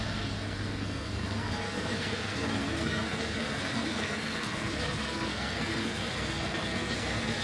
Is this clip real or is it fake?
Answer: fake